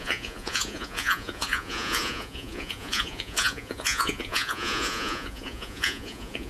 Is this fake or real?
fake